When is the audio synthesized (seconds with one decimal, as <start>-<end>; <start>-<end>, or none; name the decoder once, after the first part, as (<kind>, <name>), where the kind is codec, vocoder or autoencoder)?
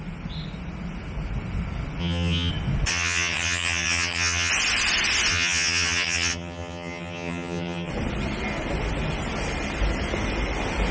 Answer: 2.0-2.5 (vocoder, HiFi-GAN); 2.9-4.5; 5.3-7.9